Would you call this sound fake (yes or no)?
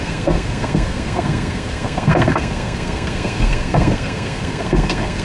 yes